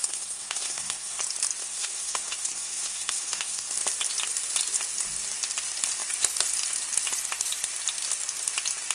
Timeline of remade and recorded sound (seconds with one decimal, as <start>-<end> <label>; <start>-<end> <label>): 0.0-1.2 remade; 1.2-1.6 recorded; 1.6-3.7 remade; 3.7-8.9 recorded